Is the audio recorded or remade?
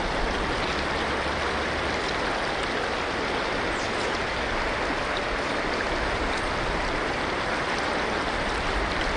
recorded